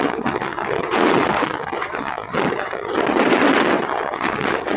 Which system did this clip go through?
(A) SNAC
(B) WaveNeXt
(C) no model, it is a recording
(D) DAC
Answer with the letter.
B